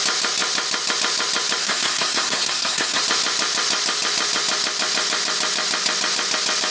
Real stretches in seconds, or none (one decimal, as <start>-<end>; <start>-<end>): 0.0-1.6; 3.0-6.7